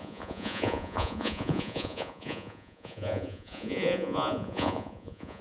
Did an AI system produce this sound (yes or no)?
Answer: yes